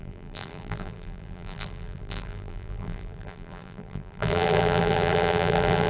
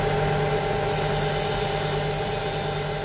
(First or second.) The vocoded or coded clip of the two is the first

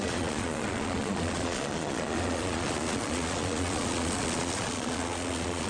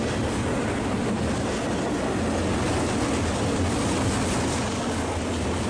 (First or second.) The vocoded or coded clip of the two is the first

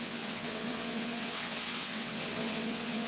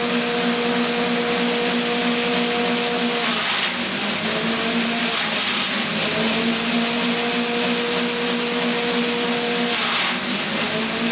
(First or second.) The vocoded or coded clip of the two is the first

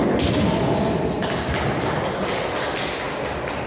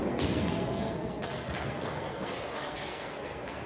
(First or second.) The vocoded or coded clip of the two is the second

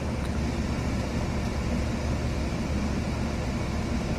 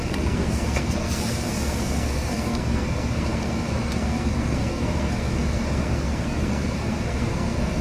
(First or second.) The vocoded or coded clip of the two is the second